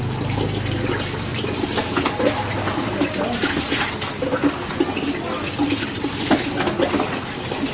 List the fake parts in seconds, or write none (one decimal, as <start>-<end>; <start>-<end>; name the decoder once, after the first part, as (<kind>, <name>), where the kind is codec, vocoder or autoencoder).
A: none